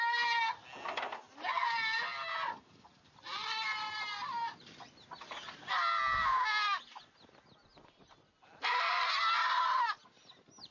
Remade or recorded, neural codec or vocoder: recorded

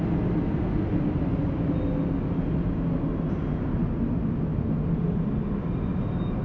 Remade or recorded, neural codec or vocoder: recorded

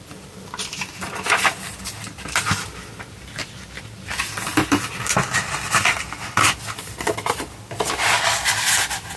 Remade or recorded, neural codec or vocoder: remade, vocoder, BigVGAN v2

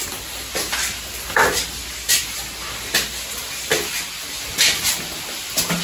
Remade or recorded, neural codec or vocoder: recorded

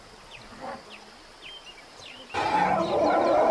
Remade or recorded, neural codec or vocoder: recorded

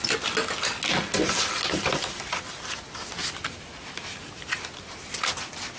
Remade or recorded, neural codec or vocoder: recorded